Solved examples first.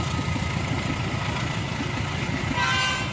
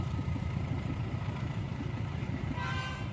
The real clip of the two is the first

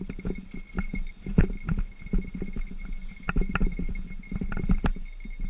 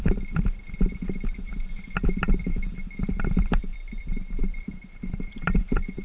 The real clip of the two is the first